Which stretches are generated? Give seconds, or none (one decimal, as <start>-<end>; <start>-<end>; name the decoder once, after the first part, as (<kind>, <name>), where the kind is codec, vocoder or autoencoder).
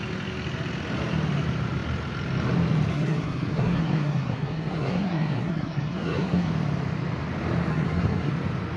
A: 2.9-6.5 (codec, SNAC); 7.7-8.3